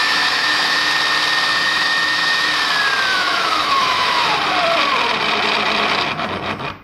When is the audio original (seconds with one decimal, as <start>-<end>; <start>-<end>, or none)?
0.9-1.5; 2.5-3.1; 4.3-6.8